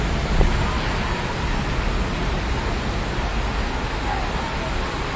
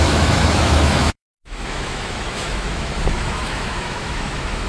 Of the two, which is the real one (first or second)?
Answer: first